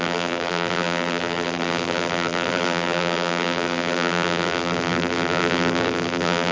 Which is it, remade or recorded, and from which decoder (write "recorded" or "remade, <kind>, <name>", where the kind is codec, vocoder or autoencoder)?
remade, vocoder, BigVGAN v2